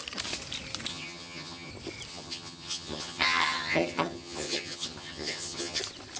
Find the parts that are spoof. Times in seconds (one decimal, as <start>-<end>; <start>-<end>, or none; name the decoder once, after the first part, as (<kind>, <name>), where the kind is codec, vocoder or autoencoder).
0.9-1.7 (vocoder, HiFi-GAN); 2.1-5.8